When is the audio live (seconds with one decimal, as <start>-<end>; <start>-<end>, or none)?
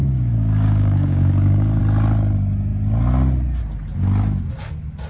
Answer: 1.8-5.1